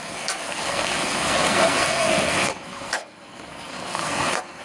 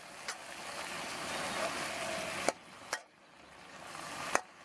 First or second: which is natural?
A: second